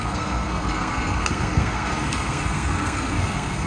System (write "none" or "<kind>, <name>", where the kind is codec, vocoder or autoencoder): codec, SNAC